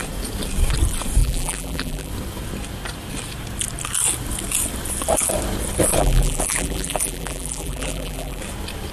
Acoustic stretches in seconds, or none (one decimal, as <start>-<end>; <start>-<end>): 0.0-1.2; 2.1-6.0; 8.4-8.9